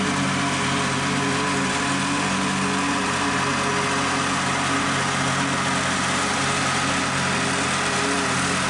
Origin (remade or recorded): recorded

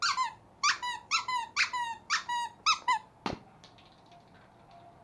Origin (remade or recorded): recorded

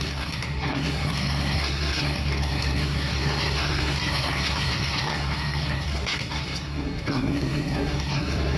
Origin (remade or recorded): remade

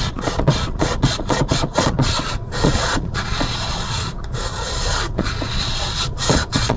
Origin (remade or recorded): remade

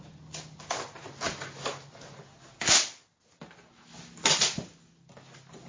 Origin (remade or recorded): recorded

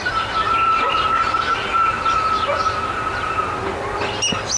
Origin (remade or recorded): recorded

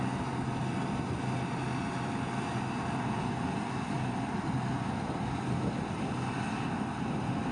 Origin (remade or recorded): recorded